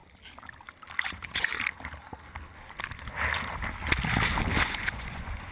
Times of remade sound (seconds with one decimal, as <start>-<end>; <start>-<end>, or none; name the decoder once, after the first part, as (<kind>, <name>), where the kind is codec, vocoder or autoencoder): 1.0-1.5 (vocoder, Vocos); 4.6-5.5